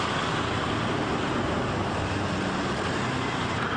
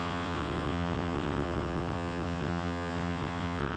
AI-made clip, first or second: second